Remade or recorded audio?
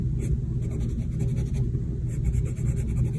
recorded